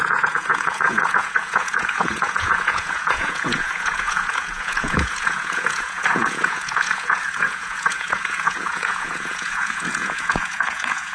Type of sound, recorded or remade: remade